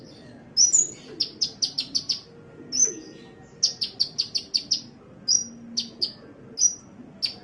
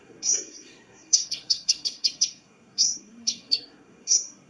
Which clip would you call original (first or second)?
first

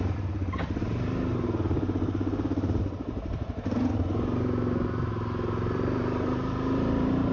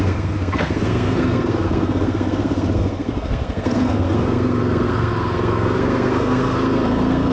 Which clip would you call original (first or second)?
first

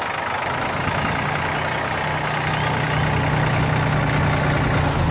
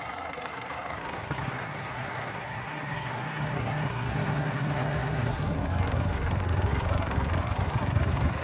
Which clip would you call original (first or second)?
first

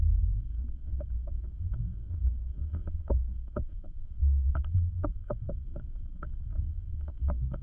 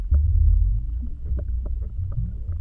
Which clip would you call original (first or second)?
second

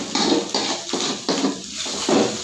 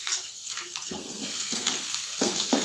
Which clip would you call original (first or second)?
first